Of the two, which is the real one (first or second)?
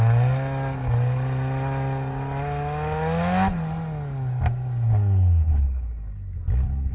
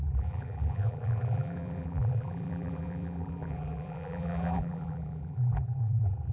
first